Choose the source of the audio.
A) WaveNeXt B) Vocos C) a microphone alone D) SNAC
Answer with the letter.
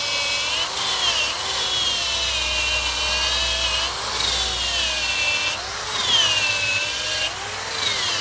C